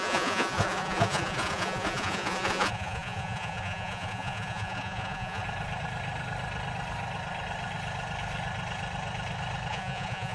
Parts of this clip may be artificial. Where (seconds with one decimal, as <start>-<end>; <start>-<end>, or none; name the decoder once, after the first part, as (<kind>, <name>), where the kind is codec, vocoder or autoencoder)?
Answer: 0.0-5.4 (vocoder, Vocos); 9.7-10.3